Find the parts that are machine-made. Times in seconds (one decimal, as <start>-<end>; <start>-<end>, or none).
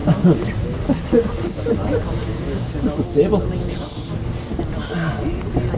0.0-0.8; 2.2-2.7